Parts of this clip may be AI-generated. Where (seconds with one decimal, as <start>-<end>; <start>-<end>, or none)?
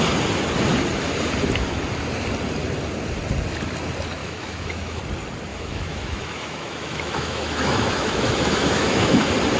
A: 4.2-5.0; 5.5-9.2